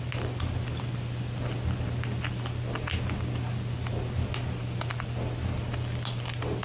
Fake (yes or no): no